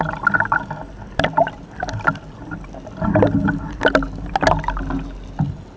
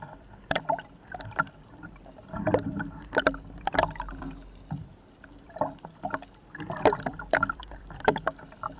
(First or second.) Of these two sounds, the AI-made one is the second